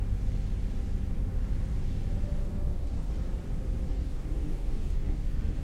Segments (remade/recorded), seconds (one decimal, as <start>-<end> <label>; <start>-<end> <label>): 0.0-2.4 recorded; 2.4-3.1 remade; 3.1-3.9 recorded; 3.9-5.6 remade